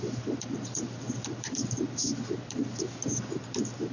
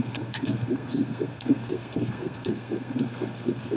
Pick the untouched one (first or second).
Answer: first